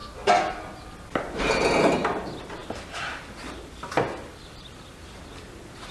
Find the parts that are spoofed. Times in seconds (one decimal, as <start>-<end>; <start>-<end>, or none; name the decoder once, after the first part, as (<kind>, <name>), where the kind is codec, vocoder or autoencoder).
none